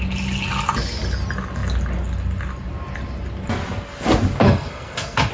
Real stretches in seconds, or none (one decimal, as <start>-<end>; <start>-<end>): 0.0-4.4